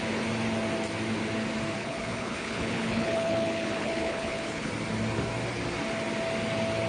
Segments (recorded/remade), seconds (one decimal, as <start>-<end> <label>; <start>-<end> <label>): 0.0-1.8 recorded; 1.8-4.7 remade; 4.7-6.9 recorded